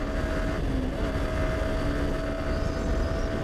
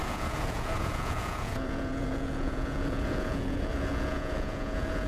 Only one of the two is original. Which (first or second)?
first